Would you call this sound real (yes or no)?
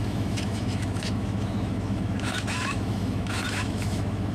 no